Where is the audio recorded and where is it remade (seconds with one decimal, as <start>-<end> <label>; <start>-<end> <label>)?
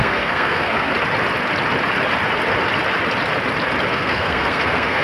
0.0-0.9 remade; 0.9-3.9 recorded; 3.9-5.0 remade